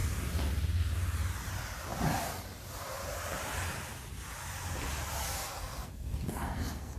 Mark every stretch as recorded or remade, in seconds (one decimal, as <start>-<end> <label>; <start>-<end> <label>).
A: 0.0-5.5 recorded; 5.5-7.0 remade